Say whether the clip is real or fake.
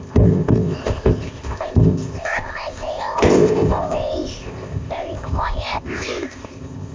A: fake